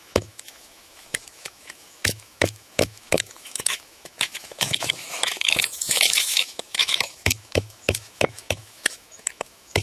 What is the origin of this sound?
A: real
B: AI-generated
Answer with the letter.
B